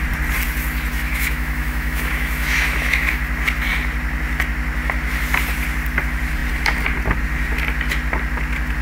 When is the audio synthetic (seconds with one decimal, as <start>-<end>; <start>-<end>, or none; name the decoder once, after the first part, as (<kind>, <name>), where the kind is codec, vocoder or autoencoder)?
0.9-3.2 (autoencoder, DAC-VAE)